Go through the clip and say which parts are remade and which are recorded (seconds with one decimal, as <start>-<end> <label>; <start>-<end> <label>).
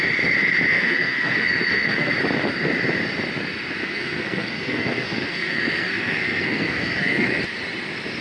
0.0-0.7 recorded; 0.7-2.1 remade; 2.1-3.8 recorded; 3.8-7.4 remade; 7.4-8.2 recorded